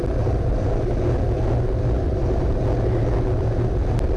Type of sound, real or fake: real